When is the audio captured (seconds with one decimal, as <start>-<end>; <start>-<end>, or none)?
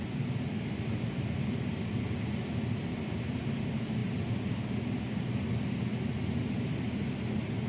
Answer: 0.0-7.7